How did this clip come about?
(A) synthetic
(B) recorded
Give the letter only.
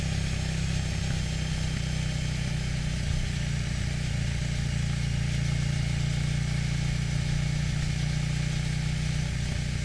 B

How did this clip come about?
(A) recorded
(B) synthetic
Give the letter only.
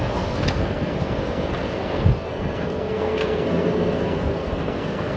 B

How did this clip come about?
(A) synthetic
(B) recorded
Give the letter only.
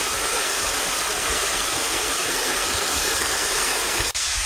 A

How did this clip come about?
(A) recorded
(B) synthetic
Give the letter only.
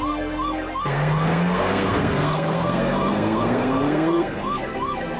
B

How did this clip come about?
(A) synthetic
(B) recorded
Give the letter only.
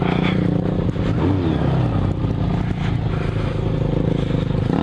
B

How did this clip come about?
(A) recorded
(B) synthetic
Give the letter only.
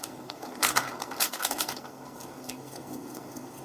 B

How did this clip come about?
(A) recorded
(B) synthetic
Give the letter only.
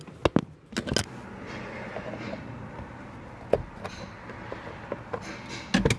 A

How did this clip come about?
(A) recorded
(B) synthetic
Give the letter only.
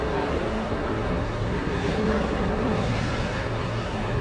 B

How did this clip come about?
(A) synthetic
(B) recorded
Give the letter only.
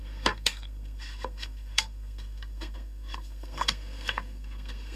A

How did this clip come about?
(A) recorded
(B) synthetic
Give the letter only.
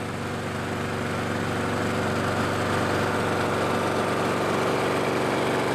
A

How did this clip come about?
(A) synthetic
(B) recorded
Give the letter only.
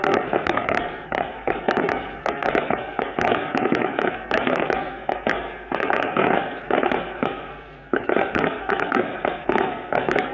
A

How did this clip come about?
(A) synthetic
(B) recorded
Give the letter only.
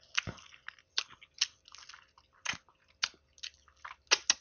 B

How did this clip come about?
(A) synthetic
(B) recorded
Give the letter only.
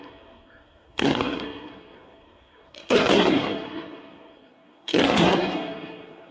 A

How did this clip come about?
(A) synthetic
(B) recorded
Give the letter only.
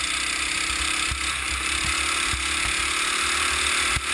B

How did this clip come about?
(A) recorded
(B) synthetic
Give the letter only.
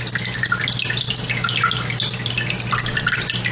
A